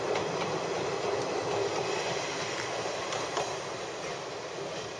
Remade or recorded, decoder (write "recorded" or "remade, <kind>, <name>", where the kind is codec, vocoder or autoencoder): recorded